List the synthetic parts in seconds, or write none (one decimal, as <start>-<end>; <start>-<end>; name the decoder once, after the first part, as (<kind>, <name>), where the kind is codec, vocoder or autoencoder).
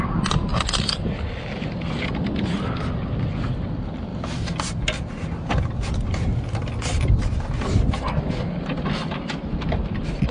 none